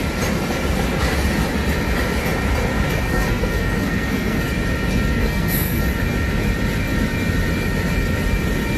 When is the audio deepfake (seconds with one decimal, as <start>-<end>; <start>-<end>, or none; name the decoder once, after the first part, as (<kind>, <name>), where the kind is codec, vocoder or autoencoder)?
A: 2.9-4.5 (codec, SNAC); 5.2-5.8

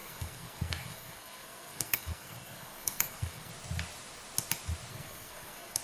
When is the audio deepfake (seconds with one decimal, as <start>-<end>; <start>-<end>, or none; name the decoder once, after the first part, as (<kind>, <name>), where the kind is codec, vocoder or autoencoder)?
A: 0.0-3.5 (codec, SNAC); 4.9-5.8

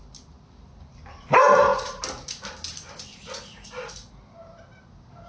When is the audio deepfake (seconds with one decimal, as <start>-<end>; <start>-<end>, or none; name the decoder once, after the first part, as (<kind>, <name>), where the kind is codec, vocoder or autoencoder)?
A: none

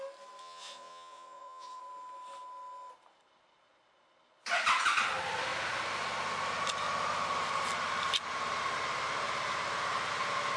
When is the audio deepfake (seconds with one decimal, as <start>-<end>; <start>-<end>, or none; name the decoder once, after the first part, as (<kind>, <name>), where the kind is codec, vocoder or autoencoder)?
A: 0.4-1.8 (vocoder, Vocos)

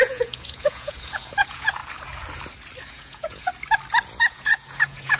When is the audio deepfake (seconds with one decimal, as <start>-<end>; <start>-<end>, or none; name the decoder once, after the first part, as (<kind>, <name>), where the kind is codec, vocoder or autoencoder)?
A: 0.0-1.8 (vocoder, Vocos); 2.9-3.5; 4.3-5.2

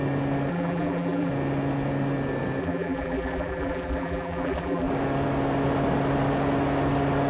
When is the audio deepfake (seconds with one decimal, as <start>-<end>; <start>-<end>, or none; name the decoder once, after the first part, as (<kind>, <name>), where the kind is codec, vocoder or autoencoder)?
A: 0.5-1.3 (vocoder, BigVGAN v2); 2.6-4.9

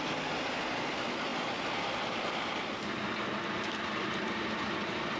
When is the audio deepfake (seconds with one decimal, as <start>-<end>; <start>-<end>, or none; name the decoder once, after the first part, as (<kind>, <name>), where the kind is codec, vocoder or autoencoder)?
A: none